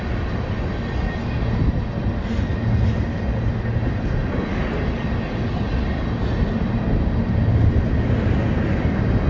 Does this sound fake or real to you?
real